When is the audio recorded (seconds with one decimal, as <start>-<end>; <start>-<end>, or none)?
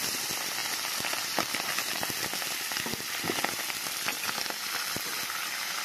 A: 0.0-5.8